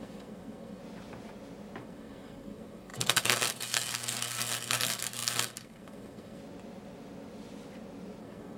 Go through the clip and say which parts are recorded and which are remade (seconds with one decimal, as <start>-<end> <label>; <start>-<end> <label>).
0.0-0.8 remade; 0.8-1.8 recorded; 1.8-6.4 remade; 6.4-8.2 recorded; 8.2-8.6 remade